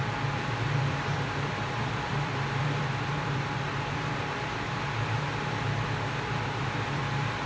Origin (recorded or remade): remade